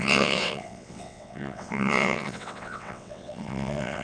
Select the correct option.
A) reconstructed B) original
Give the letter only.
A